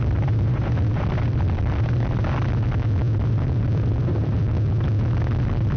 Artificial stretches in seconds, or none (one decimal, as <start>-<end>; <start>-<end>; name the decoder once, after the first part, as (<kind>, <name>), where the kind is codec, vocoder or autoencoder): 0.0-2.2 (vocoder, BigVGAN v2); 3.3-4.4